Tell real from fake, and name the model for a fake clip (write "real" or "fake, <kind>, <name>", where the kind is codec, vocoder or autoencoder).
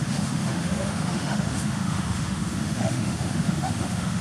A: fake, autoencoder, DAC-VAE